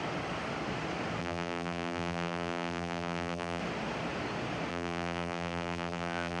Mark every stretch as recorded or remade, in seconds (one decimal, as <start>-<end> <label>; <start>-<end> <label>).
0.0-1.2 recorded; 1.2-3.6 remade; 3.6-4.7 recorded; 4.7-6.4 remade